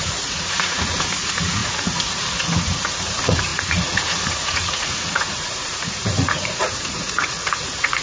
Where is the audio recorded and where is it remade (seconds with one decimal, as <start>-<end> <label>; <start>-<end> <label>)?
0.0-8.0 remade